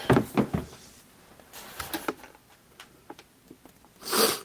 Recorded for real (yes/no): yes